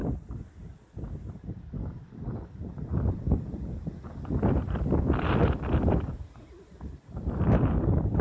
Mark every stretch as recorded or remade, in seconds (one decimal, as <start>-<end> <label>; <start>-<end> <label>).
0.0-0.5 recorded; 0.5-8.2 remade